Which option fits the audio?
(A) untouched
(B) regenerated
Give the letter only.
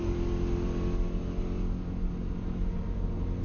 A